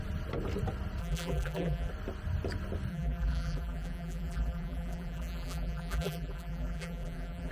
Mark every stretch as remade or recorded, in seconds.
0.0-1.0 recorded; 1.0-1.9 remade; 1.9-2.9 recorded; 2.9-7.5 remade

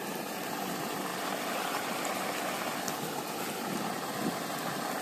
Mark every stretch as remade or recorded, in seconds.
0.0-5.0 recorded

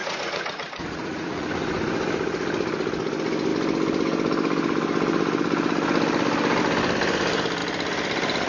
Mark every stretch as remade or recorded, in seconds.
0.0-1.5 remade; 1.5-8.5 recorded

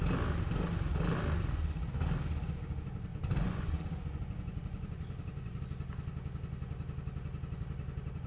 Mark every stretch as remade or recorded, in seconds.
0.0-3.1 recorded; 3.1-5.6 remade; 5.6-8.3 recorded

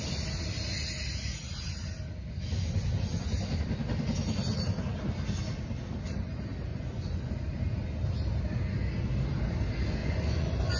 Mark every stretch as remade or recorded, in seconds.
0.0-6.7 recorded; 6.7-7.3 remade; 7.3-10.0 recorded; 10.0-10.8 remade

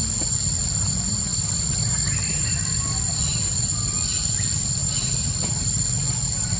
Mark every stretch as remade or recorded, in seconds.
0.0-1.3 recorded; 1.3-3.0 remade; 3.0-4.8 recorded; 4.8-5.8 remade; 5.8-6.6 recorded

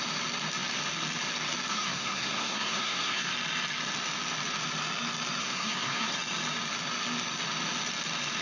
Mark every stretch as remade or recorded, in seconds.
0.0-1.7 recorded; 1.7-3.3 remade; 3.3-5.4 recorded; 5.4-6.1 remade; 6.1-8.4 recorded

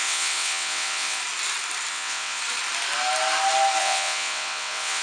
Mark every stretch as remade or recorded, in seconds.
0.0-1.2 remade; 1.2-1.9 recorded; 1.9-2.4 remade; 2.4-3.8 recorded; 3.8-5.0 remade